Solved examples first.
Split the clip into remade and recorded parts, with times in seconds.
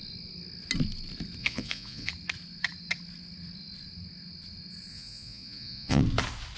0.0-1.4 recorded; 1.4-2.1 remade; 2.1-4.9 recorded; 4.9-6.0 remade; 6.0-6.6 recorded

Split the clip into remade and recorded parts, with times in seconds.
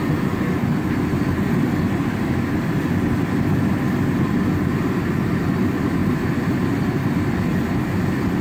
0.0-8.4 recorded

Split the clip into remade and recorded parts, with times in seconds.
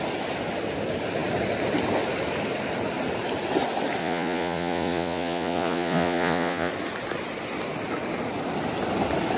0.0-4.0 recorded; 4.0-6.7 remade; 6.7-9.4 recorded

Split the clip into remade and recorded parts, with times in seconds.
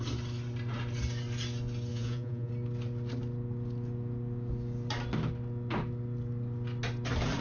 0.0-1.9 recorded; 1.9-2.5 remade; 2.5-7.4 recorded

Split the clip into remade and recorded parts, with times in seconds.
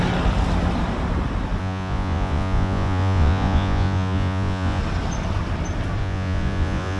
0.0-1.6 recorded; 1.6-4.8 remade; 4.8-6.0 recorded; 6.0-7.0 remade